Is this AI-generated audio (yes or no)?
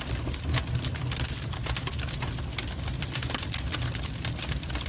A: no